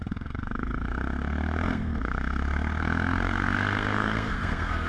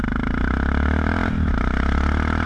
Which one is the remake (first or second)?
first